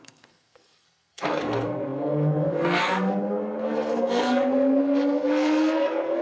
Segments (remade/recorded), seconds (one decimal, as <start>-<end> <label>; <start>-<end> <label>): 0.0-6.2 remade